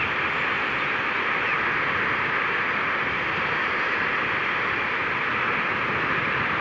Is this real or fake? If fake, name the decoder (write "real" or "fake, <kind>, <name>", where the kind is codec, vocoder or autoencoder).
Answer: real